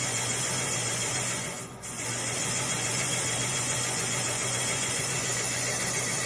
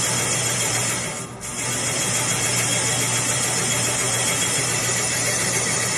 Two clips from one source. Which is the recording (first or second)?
second